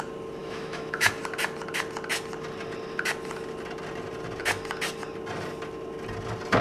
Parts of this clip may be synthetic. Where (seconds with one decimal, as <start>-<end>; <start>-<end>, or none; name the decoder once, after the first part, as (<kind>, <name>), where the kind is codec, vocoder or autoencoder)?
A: 0.4-1.1 (autoencoder, DAC-VAE)

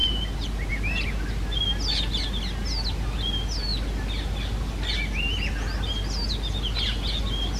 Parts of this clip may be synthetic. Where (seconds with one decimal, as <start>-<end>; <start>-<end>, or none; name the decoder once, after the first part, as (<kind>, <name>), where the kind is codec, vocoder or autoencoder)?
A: none

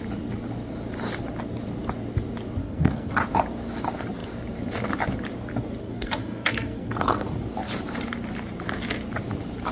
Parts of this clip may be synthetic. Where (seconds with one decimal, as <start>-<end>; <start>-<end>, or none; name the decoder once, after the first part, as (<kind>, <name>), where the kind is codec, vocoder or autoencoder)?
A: 2.6-3.1 (codec, SNAC); 5.8-7.3

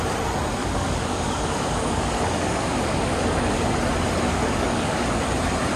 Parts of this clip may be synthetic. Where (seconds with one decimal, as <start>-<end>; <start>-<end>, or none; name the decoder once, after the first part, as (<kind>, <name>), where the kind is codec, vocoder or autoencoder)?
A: 0.6-3.7 (codec, DAC); 4.3-5.2

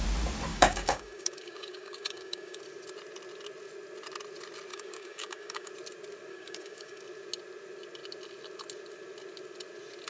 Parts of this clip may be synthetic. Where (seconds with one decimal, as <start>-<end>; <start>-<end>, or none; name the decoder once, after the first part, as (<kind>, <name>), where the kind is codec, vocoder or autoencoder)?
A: 0.5-2.6 (codec, DAC); 4.7-5.7; 6.3-7.0

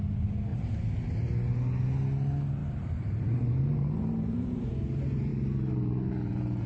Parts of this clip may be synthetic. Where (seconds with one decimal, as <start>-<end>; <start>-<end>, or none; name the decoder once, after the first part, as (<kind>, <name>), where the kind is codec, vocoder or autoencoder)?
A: 0.5-1.5 (vocoder, BigVGAN v2); 2.6-4.7